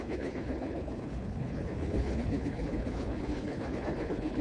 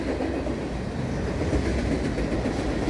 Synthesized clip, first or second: first